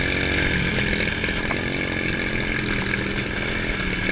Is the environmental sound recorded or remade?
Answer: recorded